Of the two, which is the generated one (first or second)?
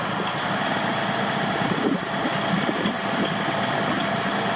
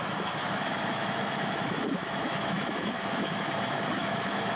second